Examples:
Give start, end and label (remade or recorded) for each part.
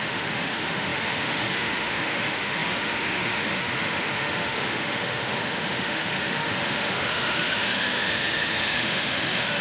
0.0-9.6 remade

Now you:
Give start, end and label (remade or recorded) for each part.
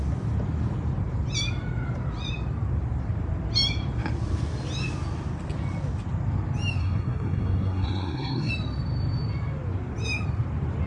0.0-6.8 recorded; 6.8-8.5 remade; 8.5-10.9 recorded